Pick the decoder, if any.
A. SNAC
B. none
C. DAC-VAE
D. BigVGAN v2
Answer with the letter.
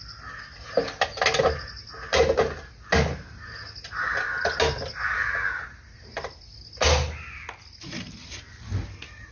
B